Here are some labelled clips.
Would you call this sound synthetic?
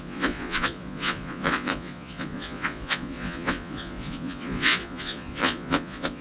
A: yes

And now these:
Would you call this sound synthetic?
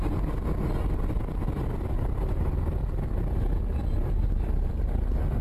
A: no